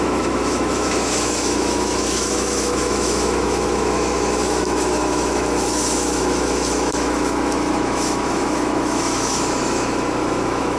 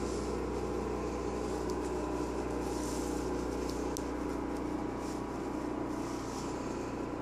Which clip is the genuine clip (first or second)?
second